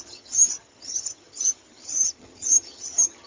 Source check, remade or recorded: remade